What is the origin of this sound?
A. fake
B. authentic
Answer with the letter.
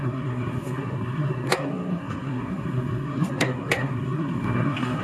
A